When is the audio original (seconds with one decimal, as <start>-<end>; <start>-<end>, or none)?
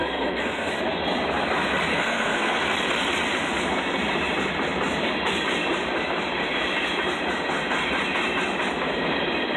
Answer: 0.7-1.9; 2.6-9.6